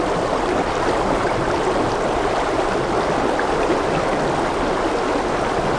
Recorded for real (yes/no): yes